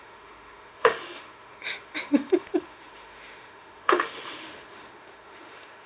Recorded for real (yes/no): no